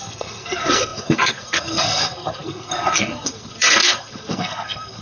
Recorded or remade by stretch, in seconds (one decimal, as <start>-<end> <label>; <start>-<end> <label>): 0.0-5.0 remade